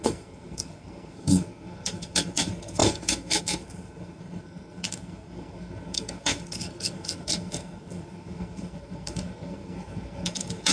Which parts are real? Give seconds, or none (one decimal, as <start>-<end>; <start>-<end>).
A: none